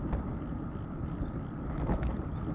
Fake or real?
real